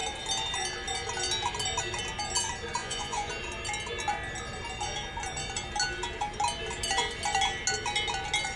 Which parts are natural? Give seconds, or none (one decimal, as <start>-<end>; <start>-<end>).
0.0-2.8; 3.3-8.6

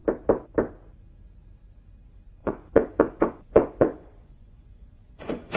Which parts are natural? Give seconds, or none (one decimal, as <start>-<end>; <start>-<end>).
0.0-2.4

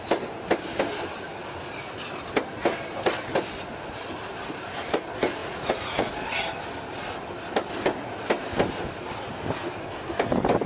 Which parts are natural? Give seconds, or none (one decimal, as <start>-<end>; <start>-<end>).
0.0-5.4; 6.1-10.7

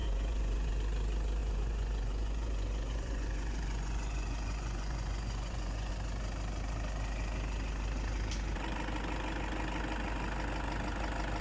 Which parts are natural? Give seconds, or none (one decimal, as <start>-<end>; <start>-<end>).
0.7-1.4; 5.9-11.4

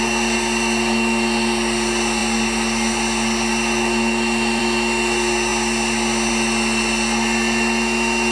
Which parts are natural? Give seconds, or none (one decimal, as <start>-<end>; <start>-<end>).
0.0-8.3

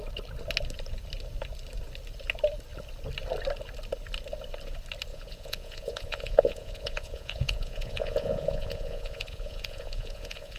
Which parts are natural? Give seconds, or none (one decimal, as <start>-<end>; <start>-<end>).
0.0-5.1